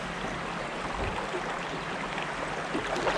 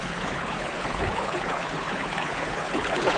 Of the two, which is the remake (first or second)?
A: second